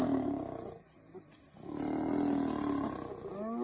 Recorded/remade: recorded